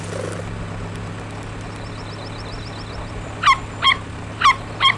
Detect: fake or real real